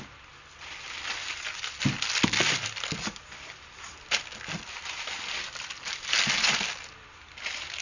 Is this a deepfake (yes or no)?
no